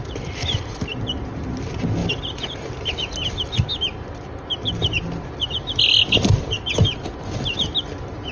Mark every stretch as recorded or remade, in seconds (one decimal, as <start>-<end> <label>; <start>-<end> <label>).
0.0-8.3 recorded